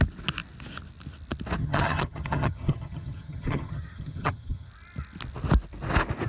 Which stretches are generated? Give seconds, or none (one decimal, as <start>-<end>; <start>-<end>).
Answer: 1.6-4.7